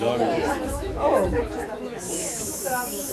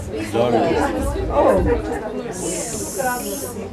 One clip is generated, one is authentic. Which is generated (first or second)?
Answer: first